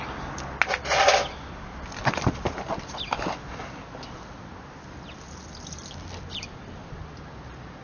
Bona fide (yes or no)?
yes